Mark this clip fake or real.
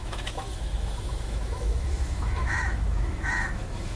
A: fake